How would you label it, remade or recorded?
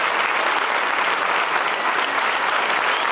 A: recorded